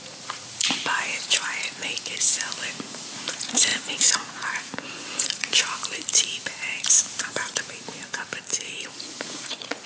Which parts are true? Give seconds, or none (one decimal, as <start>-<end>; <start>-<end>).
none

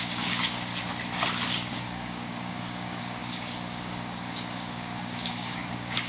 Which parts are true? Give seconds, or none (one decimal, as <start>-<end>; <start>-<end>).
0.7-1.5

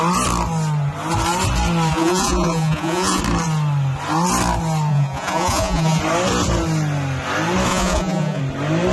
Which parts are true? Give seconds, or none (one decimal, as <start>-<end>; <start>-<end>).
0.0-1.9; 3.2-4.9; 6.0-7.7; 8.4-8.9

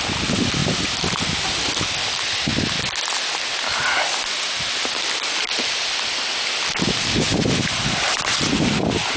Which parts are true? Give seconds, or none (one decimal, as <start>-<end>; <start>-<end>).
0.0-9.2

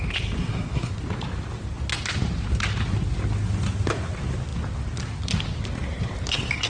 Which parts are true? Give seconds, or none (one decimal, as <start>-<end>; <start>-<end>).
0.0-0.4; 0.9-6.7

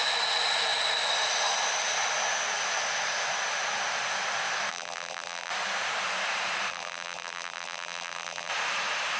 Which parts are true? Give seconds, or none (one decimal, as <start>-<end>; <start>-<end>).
0.0-4.7; 5.5-6.7; 8.5-9.2

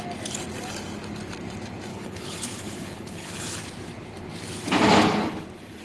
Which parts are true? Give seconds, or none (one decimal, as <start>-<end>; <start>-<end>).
0.0-1.9; 3.6-5.8